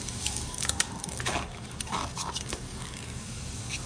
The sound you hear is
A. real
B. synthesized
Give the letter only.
B